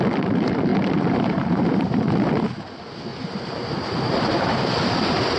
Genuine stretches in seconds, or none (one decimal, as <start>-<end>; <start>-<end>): 0.0-0.7; 2.3-3.1; 4.8-5.4